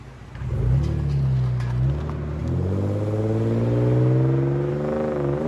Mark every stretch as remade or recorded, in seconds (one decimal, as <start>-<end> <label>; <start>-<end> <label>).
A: 0.0-5.5 recorded